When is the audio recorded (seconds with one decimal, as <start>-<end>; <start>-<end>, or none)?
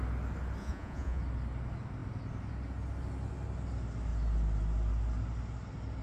0.0-0.6; 1.2-6.0